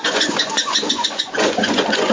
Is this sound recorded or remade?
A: remade